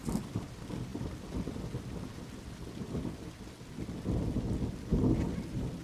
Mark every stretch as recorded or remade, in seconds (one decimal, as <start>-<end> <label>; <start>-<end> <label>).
0.0-5.8 recorded